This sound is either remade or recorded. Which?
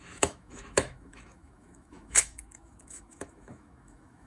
remade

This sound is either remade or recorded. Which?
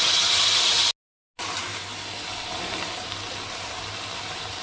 recorded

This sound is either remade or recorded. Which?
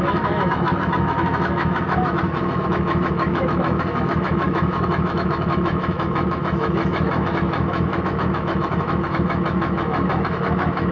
remade